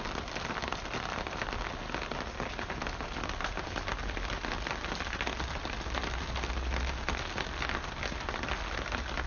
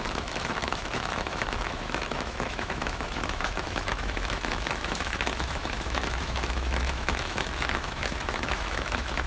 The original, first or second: first